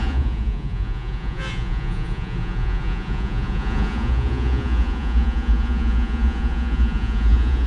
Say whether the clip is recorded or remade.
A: remade